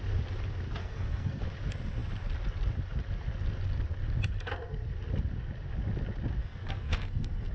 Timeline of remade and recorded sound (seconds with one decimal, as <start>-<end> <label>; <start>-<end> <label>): 0.0-0.8 recorded; 0.8-1.4 remade; 1.4-6.4 recorded; 6.4-7.5 remade